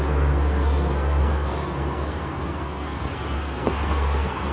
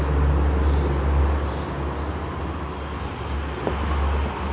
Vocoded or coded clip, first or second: first